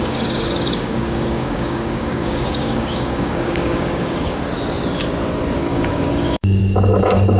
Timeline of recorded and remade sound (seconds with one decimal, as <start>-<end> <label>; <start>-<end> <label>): 0.0-4.4 remade; 4.4-5.6 recorded; 5.6-6.6 remade; 6.6-7.4 recorded